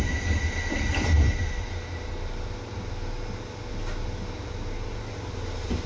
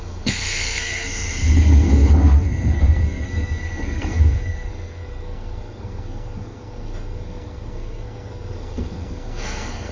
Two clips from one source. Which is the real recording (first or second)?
first